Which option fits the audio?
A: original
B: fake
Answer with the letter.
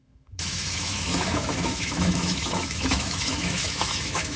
B